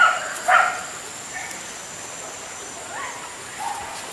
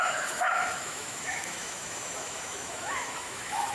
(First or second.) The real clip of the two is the first